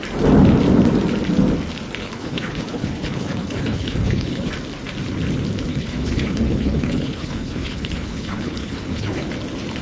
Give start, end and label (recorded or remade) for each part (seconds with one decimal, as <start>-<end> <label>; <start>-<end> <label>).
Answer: 0.0-2.0 recorded; 2.0-4.5 remade; 4.5-5.7 recorded; 5.7-9.3 remade; 9.3-9.8 recorded